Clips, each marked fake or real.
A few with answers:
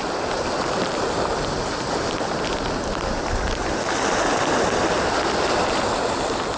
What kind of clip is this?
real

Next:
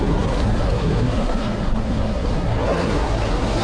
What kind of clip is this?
fake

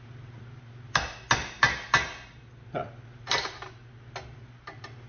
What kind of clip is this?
real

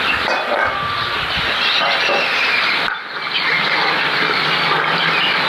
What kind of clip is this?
real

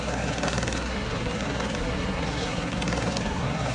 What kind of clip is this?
fake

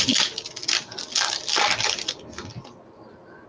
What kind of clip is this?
real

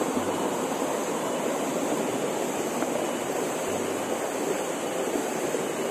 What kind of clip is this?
real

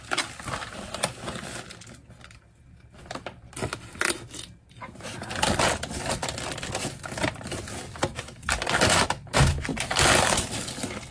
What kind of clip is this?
real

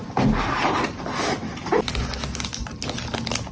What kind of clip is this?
real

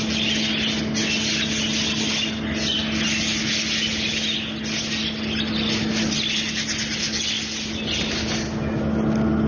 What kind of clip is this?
real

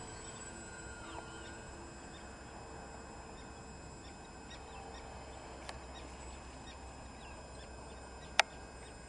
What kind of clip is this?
real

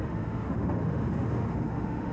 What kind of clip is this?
fake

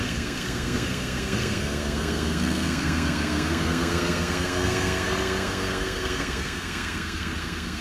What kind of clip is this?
fake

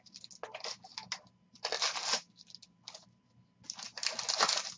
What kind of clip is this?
real